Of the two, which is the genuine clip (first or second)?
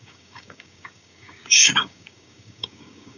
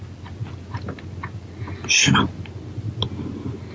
second